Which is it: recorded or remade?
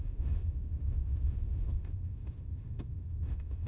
remade